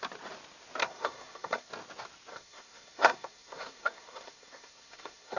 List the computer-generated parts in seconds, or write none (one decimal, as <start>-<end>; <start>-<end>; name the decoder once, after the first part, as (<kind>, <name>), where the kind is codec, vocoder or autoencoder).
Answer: 0.8-1.7 (codec, SNAC); 2.3-5.4